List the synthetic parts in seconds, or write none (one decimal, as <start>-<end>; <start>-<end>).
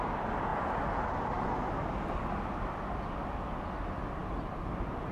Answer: none